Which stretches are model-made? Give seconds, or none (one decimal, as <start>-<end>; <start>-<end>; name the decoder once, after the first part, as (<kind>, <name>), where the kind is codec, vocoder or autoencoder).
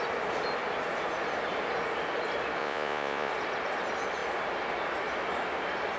2.6-3.3 (vocoder, Vocos)